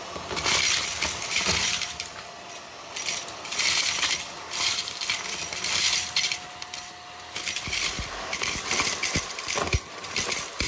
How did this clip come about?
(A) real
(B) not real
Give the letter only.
B